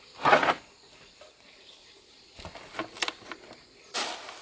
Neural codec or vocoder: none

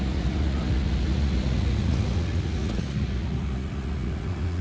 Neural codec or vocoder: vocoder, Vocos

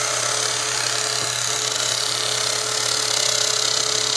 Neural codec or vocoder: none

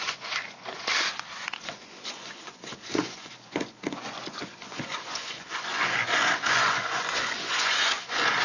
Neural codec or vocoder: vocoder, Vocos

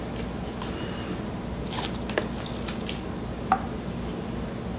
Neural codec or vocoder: none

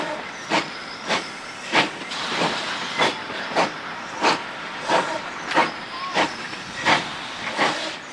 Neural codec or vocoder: vocoder, BigVGAN v2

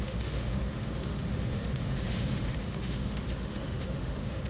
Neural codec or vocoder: autoencoder, DAC-VAE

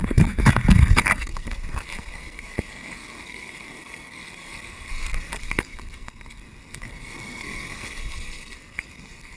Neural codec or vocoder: codec, SNAC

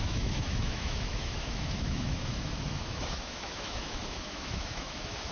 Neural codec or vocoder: autoencoder, DAC-VAE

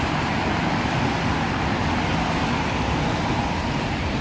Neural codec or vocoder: none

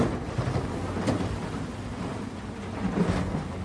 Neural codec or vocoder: none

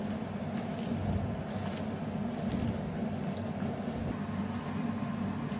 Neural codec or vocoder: none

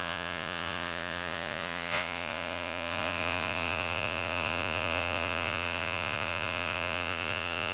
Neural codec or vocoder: vocoder, Vocos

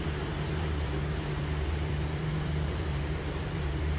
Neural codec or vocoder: vocoder, BigVGAN v2